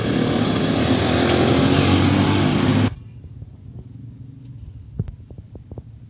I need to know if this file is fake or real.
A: real